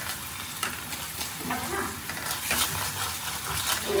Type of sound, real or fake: real